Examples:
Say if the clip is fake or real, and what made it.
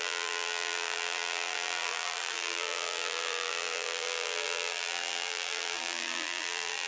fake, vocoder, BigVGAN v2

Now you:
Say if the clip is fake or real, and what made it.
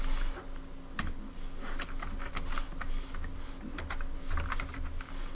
real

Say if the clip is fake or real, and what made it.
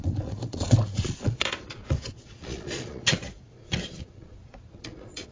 fake, vocoder, Vocos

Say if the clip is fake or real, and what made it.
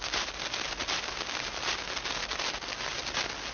real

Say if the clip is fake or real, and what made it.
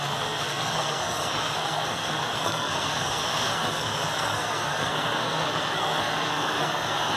fake, codec, SNAC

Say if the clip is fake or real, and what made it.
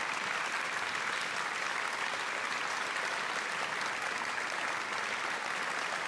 real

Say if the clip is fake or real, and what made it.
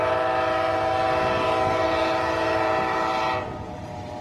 real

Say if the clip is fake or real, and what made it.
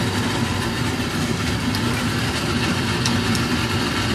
fake, vocoder, BigVGAN v2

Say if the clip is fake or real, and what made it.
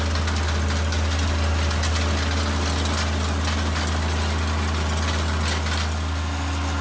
real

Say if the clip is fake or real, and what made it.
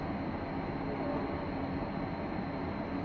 real